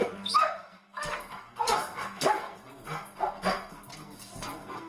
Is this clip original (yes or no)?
no